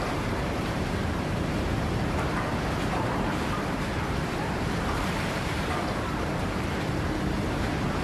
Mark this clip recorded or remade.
remade